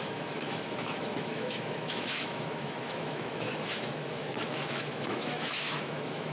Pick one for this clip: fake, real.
fake